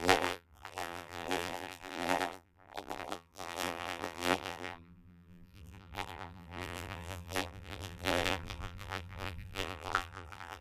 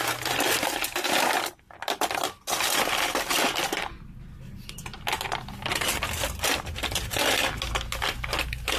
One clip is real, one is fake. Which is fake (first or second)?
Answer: first